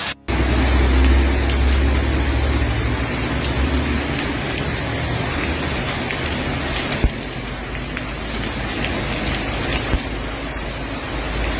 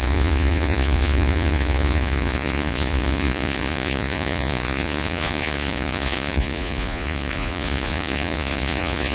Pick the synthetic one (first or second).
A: second